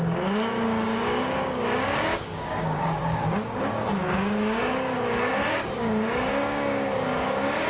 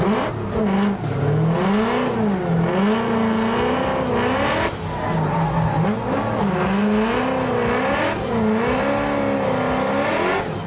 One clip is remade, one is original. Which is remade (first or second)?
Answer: first